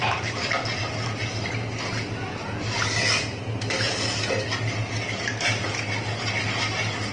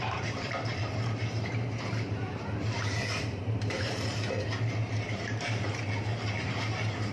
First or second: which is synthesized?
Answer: second